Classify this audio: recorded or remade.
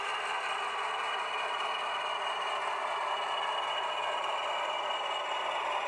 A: recorded